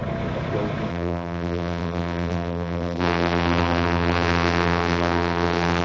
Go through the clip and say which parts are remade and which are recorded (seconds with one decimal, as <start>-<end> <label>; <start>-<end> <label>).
0.0-0.9 recorded; 0.9-5.8 remade